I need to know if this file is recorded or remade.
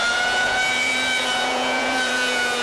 remade